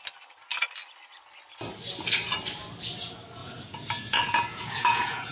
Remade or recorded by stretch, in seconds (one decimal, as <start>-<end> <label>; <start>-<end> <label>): 0.0-3.4 recorded; 3.4-5.3 remade